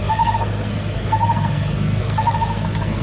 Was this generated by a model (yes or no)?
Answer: yes